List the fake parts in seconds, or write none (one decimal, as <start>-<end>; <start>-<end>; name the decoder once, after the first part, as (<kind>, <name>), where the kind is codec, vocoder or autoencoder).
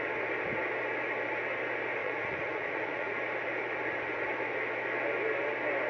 2.0-3.2 (vocoder, Vocos)